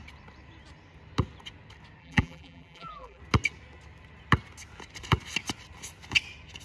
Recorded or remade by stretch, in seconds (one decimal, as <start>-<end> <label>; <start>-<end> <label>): 0.0-2.0 recorded; 2.0-3.2 remade; 3.2-6.6 recorded